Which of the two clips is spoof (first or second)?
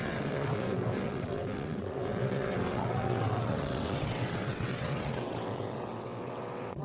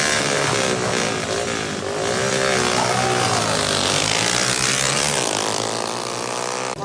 first